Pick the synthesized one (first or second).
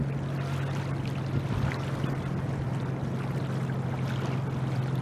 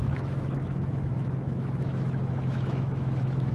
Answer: second